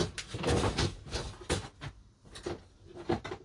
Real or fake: real